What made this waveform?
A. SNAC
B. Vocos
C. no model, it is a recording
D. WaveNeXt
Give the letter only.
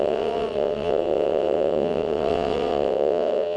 D